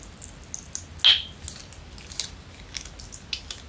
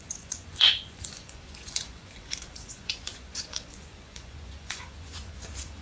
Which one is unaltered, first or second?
first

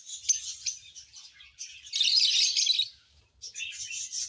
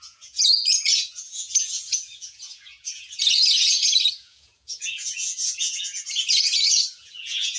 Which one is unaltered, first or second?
first